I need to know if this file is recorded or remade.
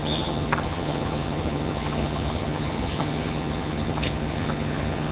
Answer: remade